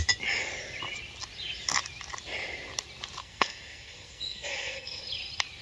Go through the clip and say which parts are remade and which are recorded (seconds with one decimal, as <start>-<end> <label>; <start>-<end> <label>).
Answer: 0.0-3.2 recorded; 3.2-5.0 remade; 5.0-5.6 recorded